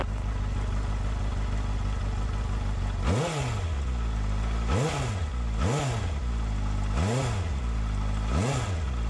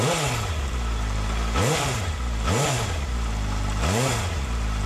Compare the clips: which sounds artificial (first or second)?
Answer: second